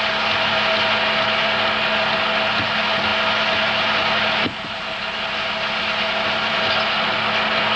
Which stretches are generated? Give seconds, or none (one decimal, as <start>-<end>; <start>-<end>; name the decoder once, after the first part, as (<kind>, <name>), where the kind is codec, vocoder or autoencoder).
none

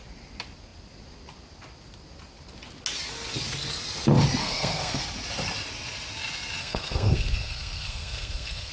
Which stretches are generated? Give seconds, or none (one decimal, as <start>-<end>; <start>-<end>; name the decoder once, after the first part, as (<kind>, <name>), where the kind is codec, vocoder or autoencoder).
4.4-5.0 (codec, SNAC); 6.6-8.7

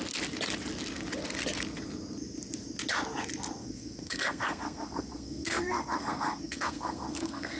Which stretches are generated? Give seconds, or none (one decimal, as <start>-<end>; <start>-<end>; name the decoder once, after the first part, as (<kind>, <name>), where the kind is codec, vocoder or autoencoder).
3.6-7.6 (codec, SNAC)

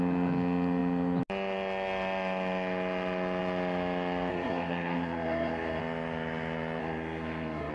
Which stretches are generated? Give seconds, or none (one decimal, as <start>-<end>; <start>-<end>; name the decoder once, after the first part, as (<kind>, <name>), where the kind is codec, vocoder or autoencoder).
4.3-5.8 (codec, SNAC); 6.8-7.7

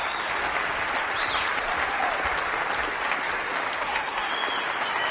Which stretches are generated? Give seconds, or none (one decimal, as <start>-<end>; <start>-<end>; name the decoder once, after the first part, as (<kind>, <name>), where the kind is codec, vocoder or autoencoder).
3.8-4.3 (codec, SNAC)

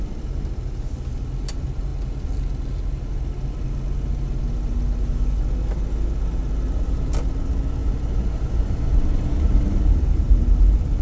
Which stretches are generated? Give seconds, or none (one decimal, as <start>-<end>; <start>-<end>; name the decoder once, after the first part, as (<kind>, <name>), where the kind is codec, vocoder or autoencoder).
none